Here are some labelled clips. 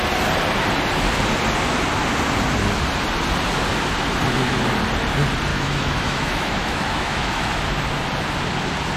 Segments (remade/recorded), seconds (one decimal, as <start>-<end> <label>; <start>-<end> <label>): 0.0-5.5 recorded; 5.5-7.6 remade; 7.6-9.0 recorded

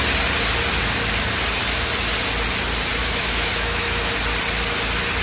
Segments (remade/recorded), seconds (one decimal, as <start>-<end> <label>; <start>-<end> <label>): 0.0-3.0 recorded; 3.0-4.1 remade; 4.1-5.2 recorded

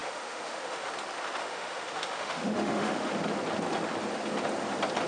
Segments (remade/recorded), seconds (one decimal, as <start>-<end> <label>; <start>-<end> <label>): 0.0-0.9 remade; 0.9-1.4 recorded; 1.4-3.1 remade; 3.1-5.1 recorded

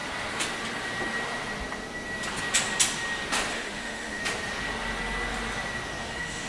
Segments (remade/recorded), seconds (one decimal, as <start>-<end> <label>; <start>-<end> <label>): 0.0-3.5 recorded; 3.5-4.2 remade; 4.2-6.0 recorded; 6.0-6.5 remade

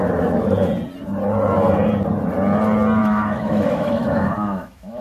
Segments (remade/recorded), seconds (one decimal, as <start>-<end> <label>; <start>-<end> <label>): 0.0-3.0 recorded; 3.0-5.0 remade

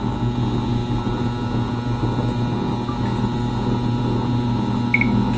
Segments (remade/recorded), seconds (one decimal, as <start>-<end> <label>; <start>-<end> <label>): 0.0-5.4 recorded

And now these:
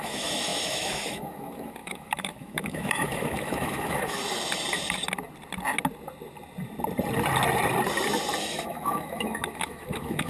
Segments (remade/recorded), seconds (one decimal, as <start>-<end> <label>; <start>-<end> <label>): 0.0-4.2 remade; 4.2-8.4 recorded; 8.4-10.3 remade

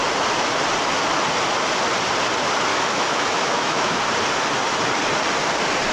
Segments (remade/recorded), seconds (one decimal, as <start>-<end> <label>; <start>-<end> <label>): 0.0-2.7 recorded; 2.7-4.0 remade; 4.0-5.9 recorded